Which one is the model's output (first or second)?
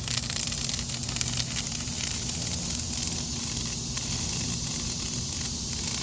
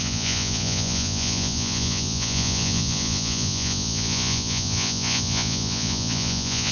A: second